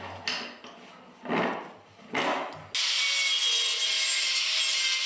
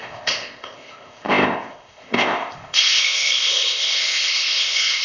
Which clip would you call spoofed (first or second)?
second